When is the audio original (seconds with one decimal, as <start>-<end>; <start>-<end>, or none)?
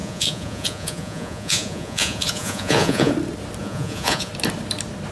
3.1-3.6; 4.3-5.1